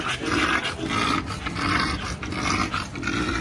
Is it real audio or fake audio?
real